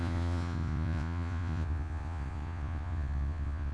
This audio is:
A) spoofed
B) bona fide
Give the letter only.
A